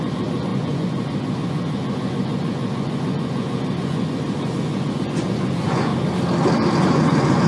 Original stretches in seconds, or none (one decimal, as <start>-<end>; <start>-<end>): 5.9-6.8